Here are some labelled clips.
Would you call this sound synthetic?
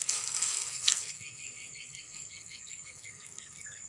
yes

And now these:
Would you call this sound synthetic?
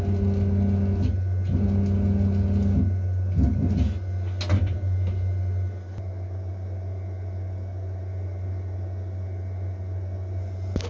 no